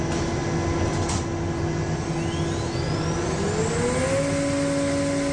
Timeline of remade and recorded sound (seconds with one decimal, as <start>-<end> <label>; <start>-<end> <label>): 0.0-5.3 recorded